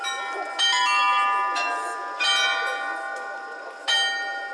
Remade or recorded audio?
recorded